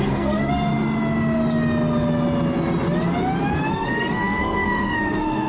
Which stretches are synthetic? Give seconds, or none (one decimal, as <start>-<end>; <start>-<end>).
0.0-0.7; 3.7-5.5